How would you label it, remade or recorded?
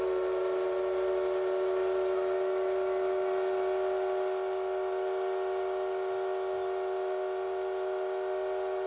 recorded